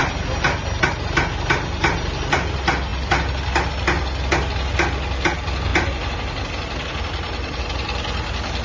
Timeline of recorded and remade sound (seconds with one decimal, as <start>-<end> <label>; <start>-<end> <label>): 0.0-8.6 recorded